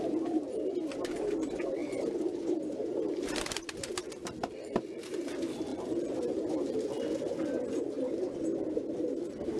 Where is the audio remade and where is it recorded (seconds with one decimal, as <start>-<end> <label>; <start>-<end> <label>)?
0.0-1.8 remade; 1.8-2.4 recorded; 2.4-9.6 remade